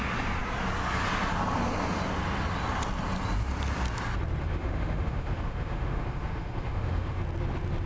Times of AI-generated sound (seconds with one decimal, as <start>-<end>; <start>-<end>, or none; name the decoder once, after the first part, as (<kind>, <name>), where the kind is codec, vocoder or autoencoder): 4.4-7.2 (autoencoder, DAC-VAE)